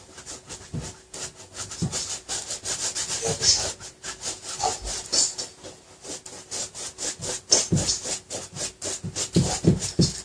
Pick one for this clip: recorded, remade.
recorded